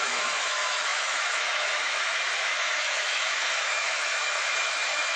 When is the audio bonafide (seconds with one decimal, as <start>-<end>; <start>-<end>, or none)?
none